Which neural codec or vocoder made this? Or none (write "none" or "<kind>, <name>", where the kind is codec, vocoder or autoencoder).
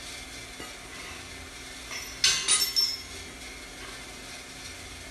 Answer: none